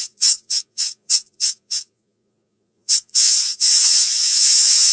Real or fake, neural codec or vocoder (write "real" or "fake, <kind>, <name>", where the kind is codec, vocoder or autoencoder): fake, vocoder, Vocos